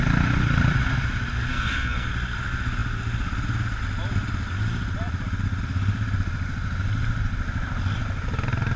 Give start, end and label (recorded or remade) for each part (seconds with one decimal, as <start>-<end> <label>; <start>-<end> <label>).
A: 0.0-1.5 recorded; 1.5-2.1 remade; 2.1-8.8 recorded